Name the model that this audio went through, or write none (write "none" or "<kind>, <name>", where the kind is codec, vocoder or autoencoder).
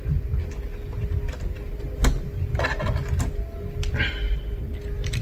none